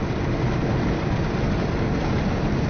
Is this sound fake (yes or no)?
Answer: no